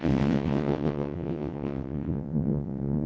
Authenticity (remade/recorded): remade